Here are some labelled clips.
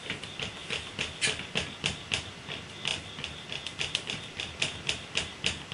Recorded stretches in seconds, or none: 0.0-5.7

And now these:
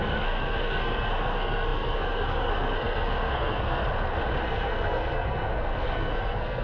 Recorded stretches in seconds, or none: 3.8-4.4

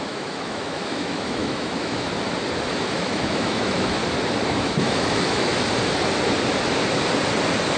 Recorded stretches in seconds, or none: 2.1-2.7; 4.0-4.5; 5.5-7.8

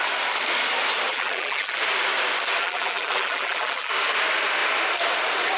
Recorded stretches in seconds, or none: 0.0-1.1; 1.8-2.6; 3.9-5.6